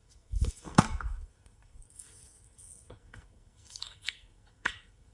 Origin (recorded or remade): remade